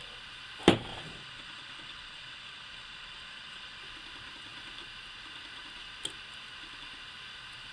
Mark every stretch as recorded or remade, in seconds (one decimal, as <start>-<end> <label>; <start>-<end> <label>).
0.0-0.9 recorded; 0.9-3.8 remade; 3.8-7.7 recorded